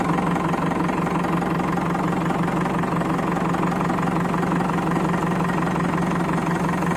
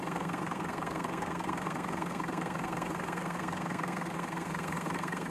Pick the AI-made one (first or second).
second